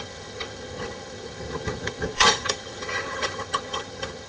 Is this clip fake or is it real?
fake